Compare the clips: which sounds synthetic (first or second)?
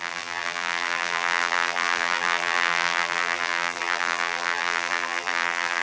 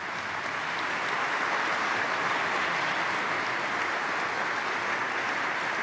first